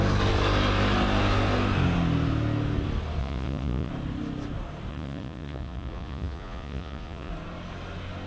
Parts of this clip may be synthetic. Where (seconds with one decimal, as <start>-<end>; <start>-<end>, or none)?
3.2-3.9; 4.9-7.3